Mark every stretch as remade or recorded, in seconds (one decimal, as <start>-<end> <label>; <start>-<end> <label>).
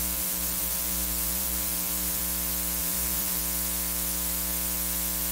0.0-2.2 remade; 2.2-2.8 recorded; 2.8-3.4 remade; 3.4-5.3 recorded